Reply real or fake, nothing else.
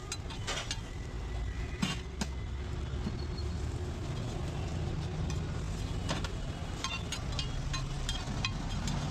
real